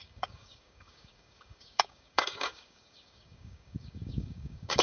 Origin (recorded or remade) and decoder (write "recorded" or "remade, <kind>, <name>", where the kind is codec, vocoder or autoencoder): remade, codec, DAC